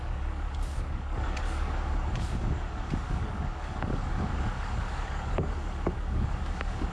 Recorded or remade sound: remade